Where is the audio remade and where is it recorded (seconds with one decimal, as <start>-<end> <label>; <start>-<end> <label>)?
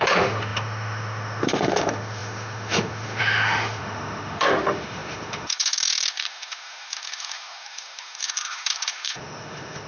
0.0-9.9 remade